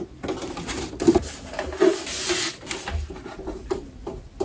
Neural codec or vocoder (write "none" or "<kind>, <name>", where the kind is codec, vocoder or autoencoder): none